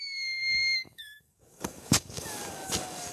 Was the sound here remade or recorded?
remade